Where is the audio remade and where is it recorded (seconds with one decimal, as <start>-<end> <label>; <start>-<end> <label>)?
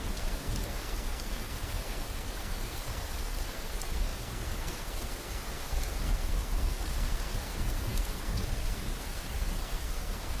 0.0-10.4 remade